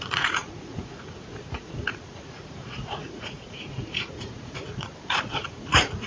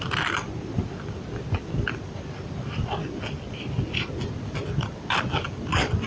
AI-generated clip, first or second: first